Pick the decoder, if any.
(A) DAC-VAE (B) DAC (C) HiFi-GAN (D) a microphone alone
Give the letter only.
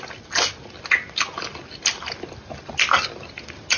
D